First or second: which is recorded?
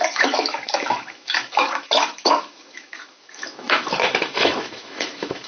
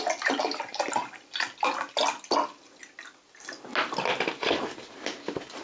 second